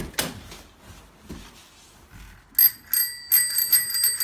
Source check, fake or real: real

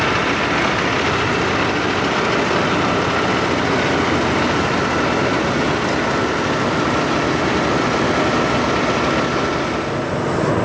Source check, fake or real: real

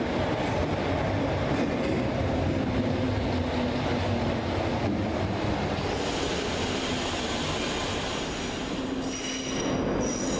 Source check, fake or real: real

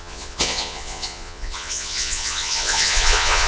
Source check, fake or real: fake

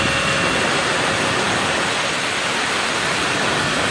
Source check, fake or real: real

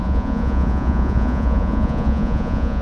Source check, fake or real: fake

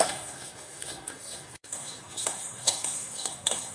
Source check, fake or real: fake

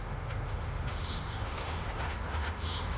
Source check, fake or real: fake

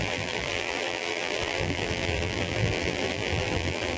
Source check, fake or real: fake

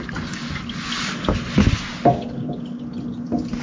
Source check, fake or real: real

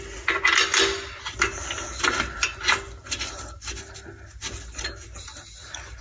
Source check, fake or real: real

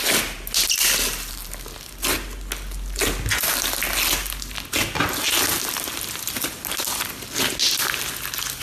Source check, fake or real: real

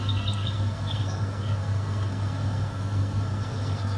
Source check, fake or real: fake